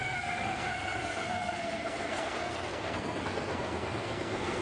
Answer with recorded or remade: remade